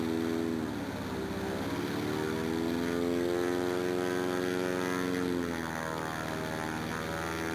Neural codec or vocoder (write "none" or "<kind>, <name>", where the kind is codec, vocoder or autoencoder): none